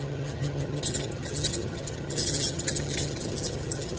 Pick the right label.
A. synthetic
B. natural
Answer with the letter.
A